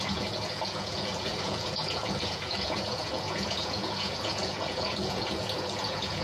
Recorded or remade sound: remade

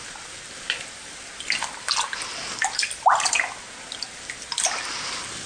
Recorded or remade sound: recorded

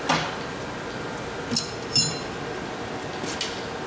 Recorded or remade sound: recorded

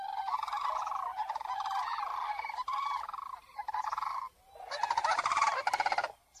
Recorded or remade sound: recorded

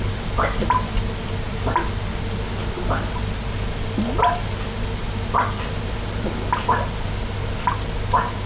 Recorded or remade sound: recorded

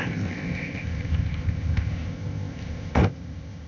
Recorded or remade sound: remade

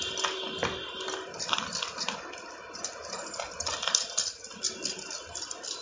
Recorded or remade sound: recorded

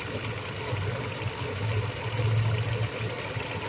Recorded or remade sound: recorded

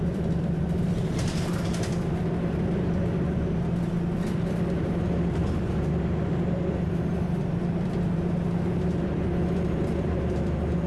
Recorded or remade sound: remade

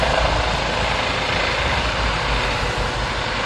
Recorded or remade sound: recorded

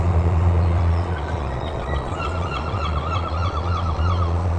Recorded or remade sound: remade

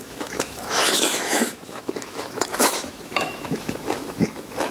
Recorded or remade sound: remade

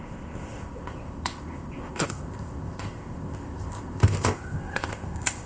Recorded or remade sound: remade